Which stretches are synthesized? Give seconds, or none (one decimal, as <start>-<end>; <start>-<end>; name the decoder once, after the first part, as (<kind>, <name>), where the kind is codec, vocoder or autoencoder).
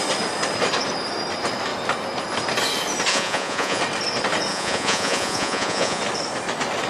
3.1-3.8 (vocoder, Vocos); 4.5-6.0